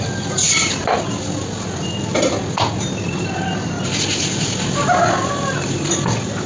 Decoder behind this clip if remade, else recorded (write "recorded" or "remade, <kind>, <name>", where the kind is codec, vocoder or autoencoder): recorded